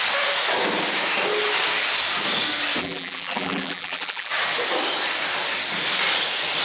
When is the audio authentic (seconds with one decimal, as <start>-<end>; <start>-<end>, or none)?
0.0-2.8; 4.3-6.6